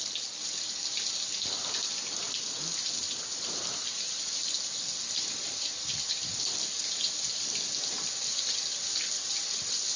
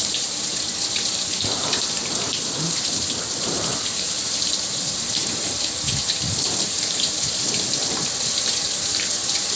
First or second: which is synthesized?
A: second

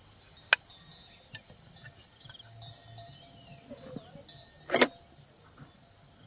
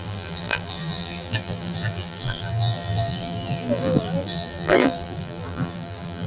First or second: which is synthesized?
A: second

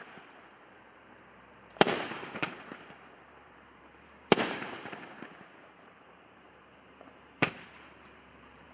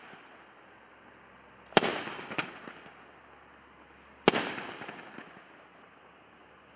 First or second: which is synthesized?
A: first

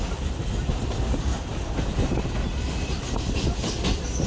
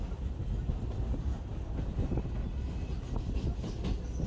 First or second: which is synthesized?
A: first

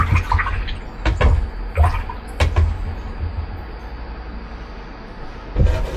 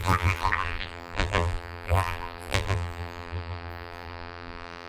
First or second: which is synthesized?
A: second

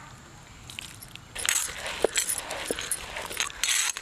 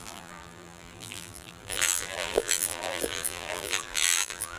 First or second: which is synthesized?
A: second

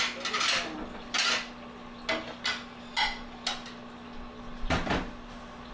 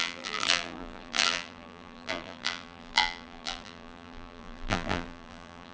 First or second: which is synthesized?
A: second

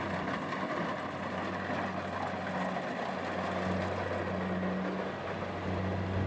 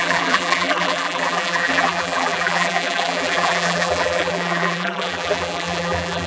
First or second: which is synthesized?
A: second